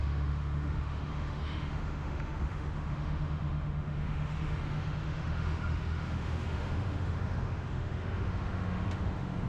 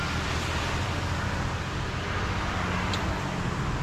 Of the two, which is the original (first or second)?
second